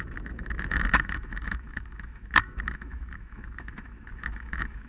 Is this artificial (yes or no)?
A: yes